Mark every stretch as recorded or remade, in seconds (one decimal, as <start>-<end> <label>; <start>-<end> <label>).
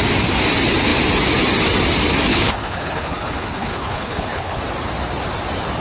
0.0-2.3 recorded; 2.3-4.6 remade; 4.6-5.8 recorded